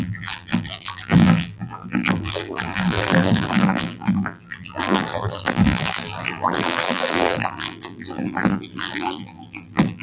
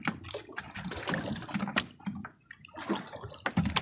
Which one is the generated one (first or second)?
first